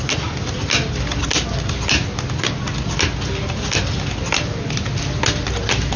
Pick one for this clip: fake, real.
real